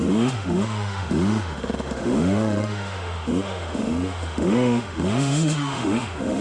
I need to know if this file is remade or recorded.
remade